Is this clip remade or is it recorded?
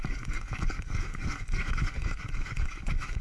remade